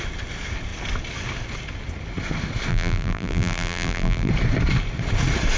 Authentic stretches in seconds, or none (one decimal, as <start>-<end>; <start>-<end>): 0.0-2.7; 4.3-5.6